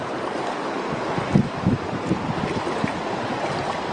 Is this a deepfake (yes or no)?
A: no